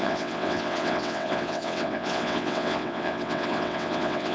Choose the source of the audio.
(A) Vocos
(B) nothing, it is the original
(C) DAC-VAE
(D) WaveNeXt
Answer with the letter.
D